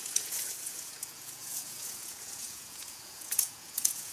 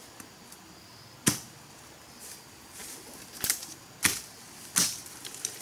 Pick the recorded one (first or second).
second